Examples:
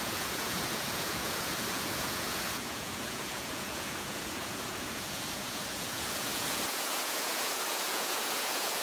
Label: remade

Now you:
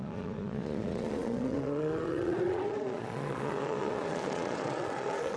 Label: remade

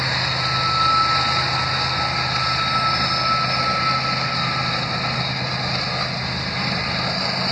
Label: recorded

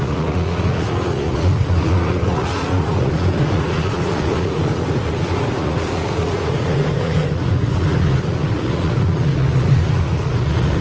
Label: remade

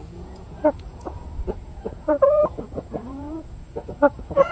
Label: remade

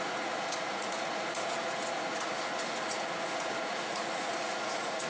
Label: remade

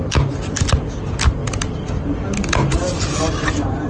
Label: recorded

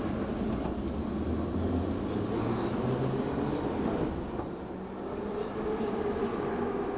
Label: recorded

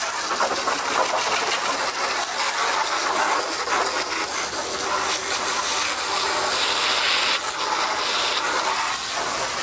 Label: recorded